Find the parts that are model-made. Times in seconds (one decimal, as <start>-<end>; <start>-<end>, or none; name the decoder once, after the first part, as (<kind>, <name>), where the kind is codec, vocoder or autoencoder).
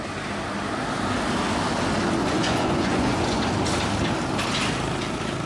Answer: 2.2-3.4 (vocoder, Vocos)